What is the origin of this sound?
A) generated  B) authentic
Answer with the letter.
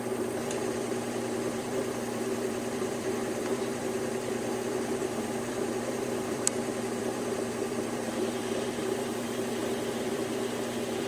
A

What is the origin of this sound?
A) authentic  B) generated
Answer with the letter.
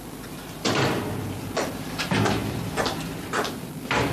B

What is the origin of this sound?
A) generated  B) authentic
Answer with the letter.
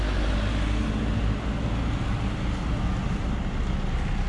B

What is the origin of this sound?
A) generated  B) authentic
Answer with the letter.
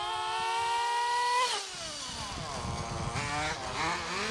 B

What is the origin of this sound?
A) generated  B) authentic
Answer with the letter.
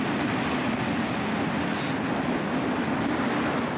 B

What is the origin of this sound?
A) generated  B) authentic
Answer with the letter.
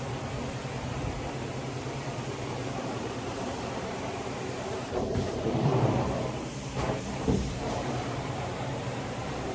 A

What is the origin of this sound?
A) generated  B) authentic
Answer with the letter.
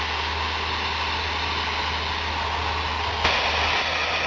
B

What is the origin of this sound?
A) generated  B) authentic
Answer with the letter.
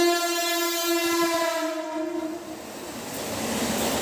B